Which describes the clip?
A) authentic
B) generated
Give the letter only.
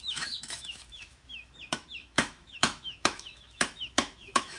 B